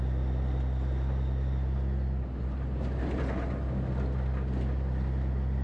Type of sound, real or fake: real